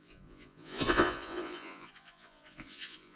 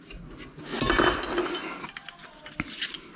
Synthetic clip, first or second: first